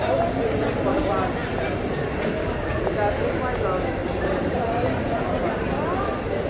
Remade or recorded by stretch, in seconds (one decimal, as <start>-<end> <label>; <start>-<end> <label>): 0.0-4.0 recorded; 4.0-5.4 remade; 5.4-6.5 recorded